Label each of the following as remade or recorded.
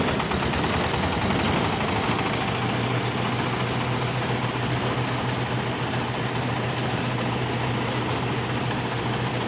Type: recorded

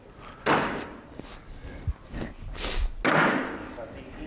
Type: recorded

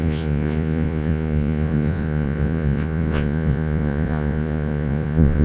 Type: remade